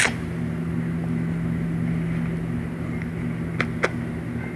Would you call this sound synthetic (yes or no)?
no